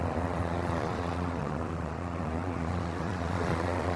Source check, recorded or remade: remade